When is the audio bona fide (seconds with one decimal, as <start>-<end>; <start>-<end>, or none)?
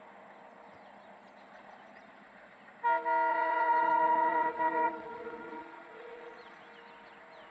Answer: 0.0-3.3; 6.6-7.5